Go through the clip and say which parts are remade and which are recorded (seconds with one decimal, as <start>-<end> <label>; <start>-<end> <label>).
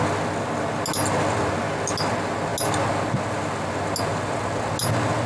0.0-5.3 recorded